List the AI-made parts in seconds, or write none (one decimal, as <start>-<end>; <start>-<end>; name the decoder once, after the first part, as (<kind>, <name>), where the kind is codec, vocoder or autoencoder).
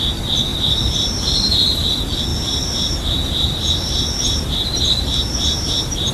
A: 0.5-1.9 (vocoder, BigVGAN v2); 2.3-6.1